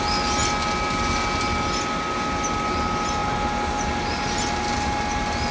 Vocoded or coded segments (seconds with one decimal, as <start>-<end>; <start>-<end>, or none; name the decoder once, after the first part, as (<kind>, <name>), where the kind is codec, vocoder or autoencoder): none